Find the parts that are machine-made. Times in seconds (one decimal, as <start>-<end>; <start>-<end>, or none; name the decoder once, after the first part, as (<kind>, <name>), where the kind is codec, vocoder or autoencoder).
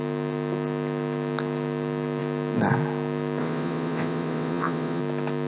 3.4-5.0 (vocoder, WaveNeXt)